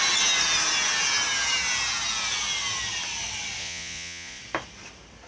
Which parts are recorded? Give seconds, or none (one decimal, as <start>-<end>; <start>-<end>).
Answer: 0.0-3.6; 4.4-5.3